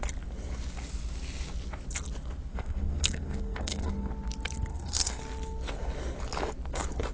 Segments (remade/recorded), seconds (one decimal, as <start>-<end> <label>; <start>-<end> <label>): 0.0-2.5 recorded; 2.5-4.1 remade; 4.1-4.7 recorded; 4.7-5.2 remade; 5.2-7.1 recorded